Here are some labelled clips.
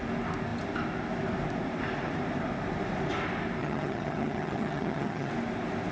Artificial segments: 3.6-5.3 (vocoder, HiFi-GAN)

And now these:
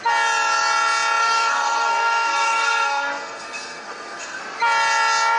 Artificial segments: 1.2-4.4 (codec, SNAC)

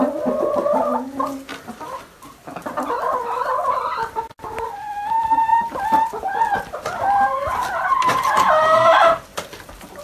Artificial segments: 9.3-10.0 (vocoder, BigVGAN v2)

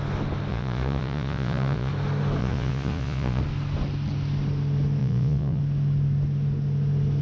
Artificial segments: 0.5-1.9 (vocoder, Vocos); 2.4-3.4; 5.0-5.6